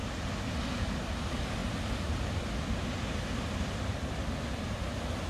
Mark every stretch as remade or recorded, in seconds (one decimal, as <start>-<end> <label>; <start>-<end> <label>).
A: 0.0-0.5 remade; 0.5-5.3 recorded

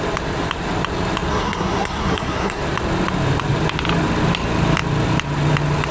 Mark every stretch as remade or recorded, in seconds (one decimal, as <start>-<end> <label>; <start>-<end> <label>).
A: 0.0-1.3 recorded; 1.3-2.6 remade; 2.6-5.9 recorded

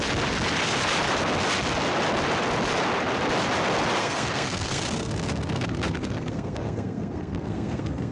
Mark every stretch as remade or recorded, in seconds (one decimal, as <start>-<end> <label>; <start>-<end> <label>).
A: 0.0-4.0 recorded; 4.0-8.1 remade

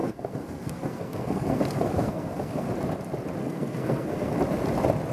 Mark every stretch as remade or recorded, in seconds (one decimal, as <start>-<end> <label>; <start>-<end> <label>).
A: 0.0-2.7 remade; 2.7-3.4 recorded; 3.4-4.3 remade; 4.3-5.1 recorded

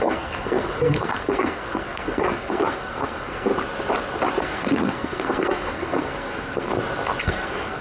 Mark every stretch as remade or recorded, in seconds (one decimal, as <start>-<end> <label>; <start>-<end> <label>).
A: 0.0-3.5 remade; 3.5-4.4 recorded; 4.4-6.7 remade; 6.7-7.2 recorded; 7.2-7.8 remade

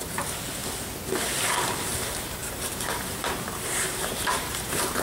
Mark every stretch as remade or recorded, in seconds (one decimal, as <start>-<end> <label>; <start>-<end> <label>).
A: 0.0-0.6 remade; 0.6-1.8 recorded; 1.8-5.0 remade